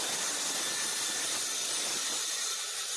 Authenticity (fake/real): real